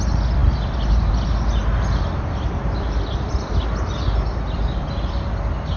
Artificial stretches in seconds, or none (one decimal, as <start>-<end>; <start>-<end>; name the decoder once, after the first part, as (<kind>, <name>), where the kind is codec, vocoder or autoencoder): none